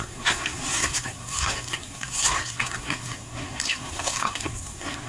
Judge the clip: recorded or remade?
remade